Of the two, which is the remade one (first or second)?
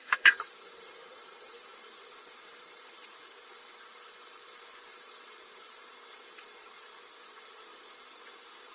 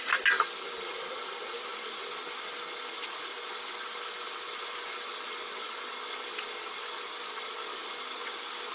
first